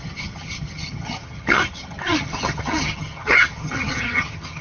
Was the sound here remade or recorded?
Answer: remade